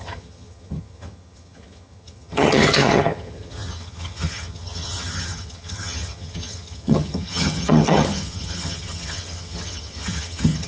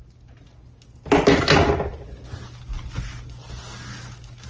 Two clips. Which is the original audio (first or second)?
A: second